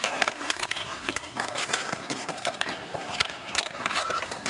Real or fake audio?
fake